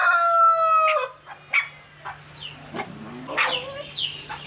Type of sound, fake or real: real